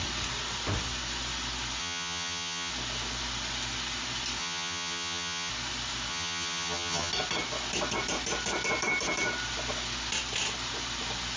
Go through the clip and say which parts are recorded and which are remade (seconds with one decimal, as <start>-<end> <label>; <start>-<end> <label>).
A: 0.0-1.8 recorded; 1.8-2.7 remade; 2.7-4.4 recorded; 4.4-5.5 remade; 5.5-6.1 recorded; 6.1-7.1 remade; 7.1-11.4 recorded